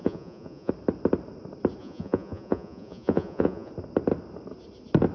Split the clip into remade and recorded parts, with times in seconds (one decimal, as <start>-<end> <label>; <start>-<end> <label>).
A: 0.0-0.7 remade; 0.7-1.8 recorded; 1.8-3.7 remade; 3.7-5.1 recorded